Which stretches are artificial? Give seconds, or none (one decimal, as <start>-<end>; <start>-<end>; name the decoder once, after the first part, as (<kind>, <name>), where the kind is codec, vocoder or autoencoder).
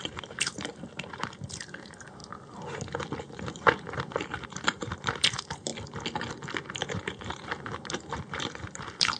0.0-2.2 (vocoder, BigVGAN v2); 3.2-5.7; 6.7-9.2